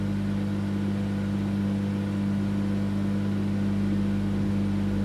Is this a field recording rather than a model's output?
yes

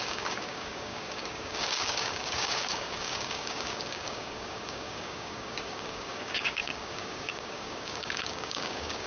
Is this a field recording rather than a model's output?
no